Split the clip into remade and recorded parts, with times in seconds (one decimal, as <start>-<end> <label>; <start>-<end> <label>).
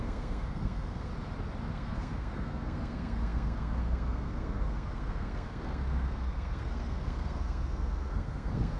0.0-1.1 remade; 1.1-1.7 recorded; 1.7-8.8 remade